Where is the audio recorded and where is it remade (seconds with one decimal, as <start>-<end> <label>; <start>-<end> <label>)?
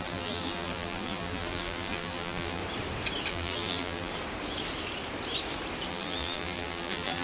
0.0-2.6 remade; 2.6-3.3 recorded; 3.3-4.1 remade; 4.1-5.9 recorded; 5.9-7.2 remade